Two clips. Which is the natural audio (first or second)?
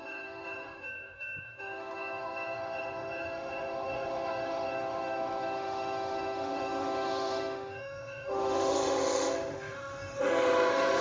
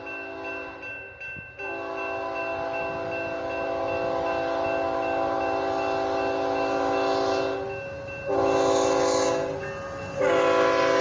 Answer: second